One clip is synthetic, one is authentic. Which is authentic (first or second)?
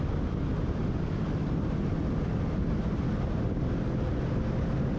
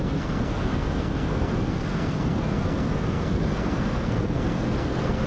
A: first